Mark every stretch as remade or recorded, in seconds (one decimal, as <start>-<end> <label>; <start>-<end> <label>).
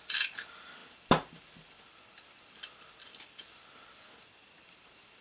0.0-5.2 recorded